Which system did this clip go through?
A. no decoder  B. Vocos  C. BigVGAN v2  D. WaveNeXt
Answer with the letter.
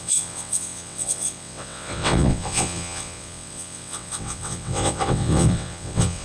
D